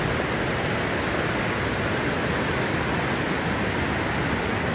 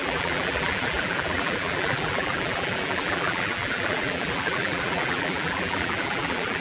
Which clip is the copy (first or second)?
second